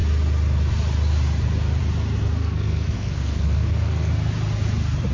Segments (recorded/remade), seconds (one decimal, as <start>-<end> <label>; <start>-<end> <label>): 0.0-2.4 recorded; 2.4-4.1 remade; 4.1-5.1 recorded